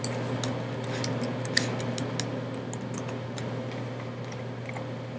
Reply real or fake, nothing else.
real